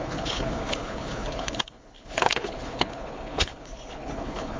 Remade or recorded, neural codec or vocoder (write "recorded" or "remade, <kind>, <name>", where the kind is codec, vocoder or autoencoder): remade, codec, HILCodec